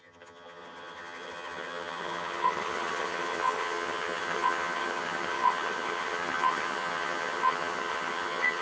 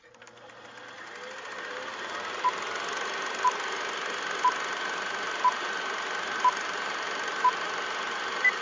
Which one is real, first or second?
second